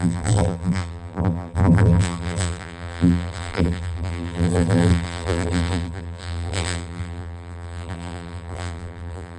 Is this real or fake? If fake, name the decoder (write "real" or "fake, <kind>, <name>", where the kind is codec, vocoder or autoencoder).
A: fake, vocoder, BigVGAN v2